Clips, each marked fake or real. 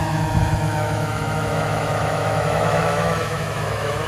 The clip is fake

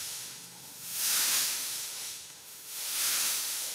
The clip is fake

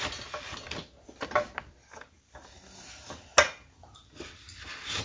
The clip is real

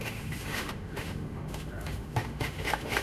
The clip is fake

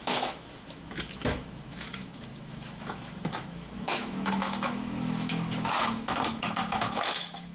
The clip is fake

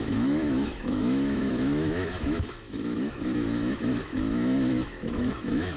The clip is fake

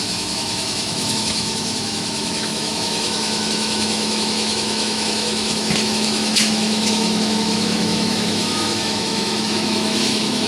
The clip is fake